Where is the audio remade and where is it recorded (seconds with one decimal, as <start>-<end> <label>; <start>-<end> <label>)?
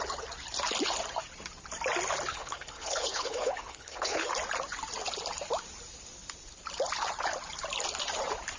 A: 0.0-2.3 recorded; 2.3-4.3 remade; 4.3-8.6 recorded